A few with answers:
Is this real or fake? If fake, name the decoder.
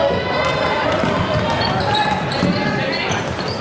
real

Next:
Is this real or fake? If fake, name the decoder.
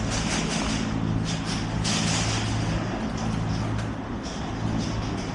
real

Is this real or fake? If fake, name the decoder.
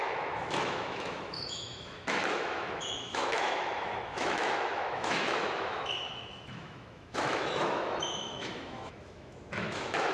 fake, autoencoder, DAC-VAE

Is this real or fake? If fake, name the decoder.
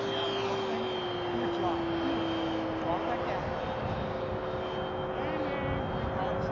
real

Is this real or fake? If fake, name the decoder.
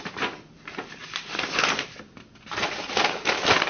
real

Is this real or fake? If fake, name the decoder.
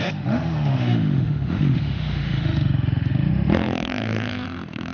fake, autoencoder, DAC-VAE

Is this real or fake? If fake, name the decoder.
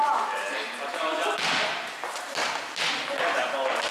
real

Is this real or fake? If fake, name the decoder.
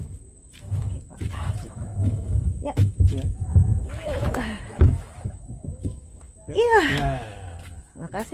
fake, autoencoder, DAC-VAE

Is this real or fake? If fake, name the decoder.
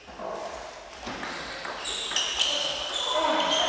real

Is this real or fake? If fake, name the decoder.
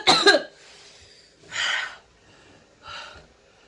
real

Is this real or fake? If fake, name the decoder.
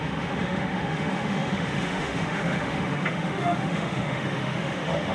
fake, autoencoder, DAC-VAE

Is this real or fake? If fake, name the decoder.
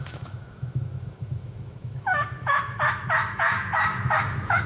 fake, autoencoder, DAC-VAE